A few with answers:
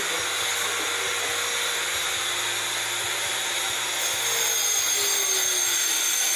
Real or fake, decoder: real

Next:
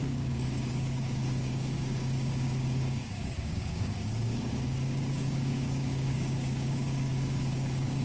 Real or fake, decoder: fake, codec, DAC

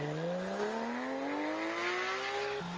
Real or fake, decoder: real